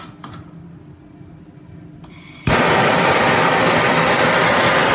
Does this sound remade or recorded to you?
recorded